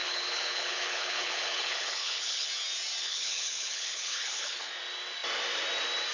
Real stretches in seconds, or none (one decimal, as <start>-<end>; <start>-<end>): 2.5-3.0; 4.7-6.1